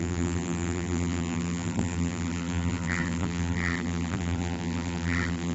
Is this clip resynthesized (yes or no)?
yes